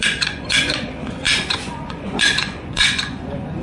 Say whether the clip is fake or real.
fake